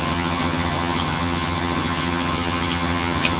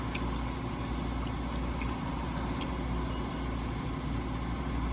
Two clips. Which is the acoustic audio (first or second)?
second